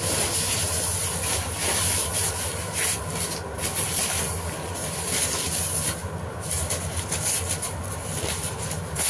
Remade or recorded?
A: recorded